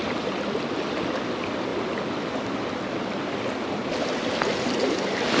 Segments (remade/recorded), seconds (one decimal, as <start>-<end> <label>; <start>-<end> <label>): 0.0-5.4 recorded